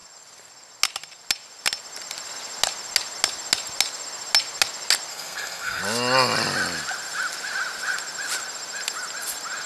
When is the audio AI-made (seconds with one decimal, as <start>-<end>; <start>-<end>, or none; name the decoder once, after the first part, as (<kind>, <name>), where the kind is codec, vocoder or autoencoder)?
5.1-5.8 (codec, SNAC)